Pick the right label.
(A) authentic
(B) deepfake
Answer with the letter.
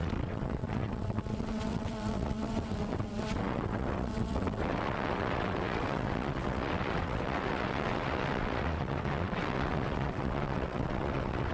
B